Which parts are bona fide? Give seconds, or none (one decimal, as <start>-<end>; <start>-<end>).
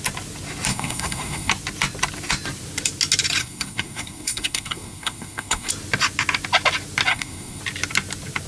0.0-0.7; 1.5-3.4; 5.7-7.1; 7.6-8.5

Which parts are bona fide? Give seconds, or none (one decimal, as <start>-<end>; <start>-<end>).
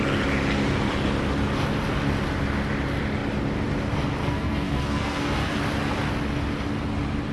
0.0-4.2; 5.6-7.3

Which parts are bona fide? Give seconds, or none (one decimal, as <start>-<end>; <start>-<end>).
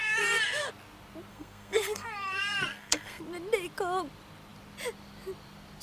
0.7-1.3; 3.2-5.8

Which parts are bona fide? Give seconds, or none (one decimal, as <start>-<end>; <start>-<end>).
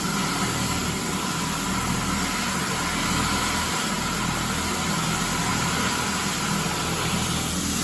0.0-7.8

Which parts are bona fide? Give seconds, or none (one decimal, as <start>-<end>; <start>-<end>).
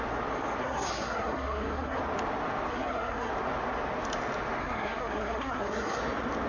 0.0-0.6; 2.0-2.7; 3.3-4.6; 6.0-6.5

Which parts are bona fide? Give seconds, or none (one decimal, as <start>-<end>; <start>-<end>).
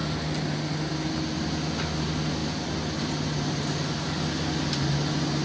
0.0-5.4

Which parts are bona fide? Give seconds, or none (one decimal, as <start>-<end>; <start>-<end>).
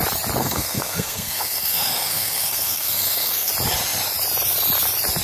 0.0-0.4; 3.5-5.2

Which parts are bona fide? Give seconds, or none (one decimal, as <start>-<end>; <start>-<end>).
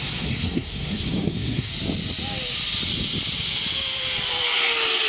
1.7-5.1